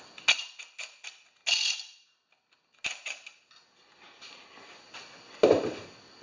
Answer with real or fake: real